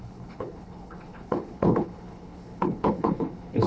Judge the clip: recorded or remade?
remade